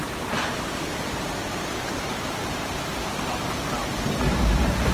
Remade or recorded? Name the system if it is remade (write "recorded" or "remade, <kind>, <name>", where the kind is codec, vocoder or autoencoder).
remade, vocoder, BigVGAN v2